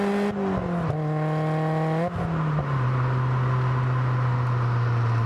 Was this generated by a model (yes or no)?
no